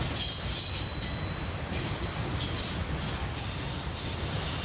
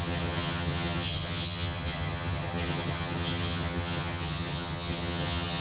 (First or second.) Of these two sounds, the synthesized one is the second